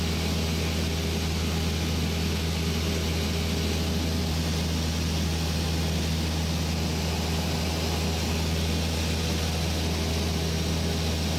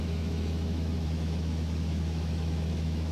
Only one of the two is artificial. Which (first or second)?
second